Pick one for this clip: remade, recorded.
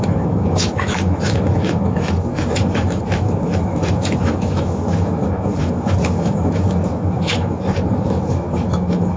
remade